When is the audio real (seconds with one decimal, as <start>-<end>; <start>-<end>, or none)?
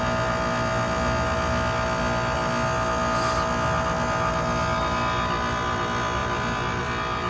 0.0-7.3